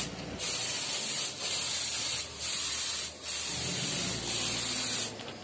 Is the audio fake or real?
real